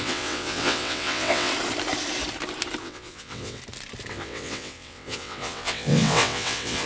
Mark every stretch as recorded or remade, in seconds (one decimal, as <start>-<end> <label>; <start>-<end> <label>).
0.0-1.5 remade; 1.5-2.8 recorded; 2.8-3.6 remade; 3.6-4.1 recorded; 4.1-6.9 remade